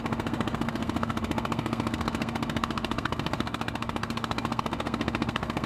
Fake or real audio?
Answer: fake